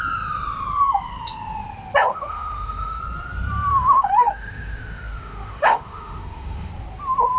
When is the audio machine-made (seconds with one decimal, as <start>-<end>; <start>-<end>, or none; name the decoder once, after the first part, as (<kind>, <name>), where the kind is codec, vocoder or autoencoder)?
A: 2.1-3.0 (autoencoder, DAC-VAE); 3.7-6.7